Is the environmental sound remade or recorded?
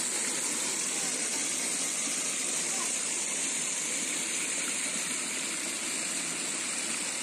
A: recorded